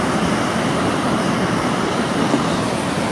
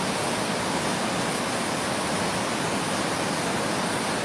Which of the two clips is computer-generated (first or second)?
first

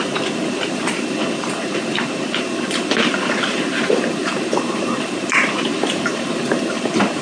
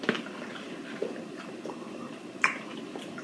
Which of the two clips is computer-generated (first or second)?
first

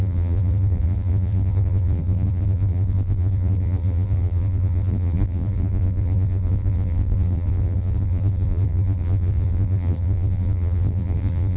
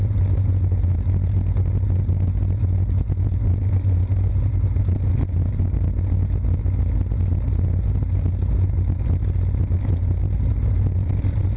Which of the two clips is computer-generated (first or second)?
first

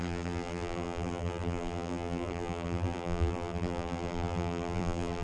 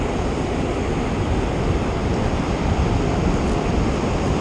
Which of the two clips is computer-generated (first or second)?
first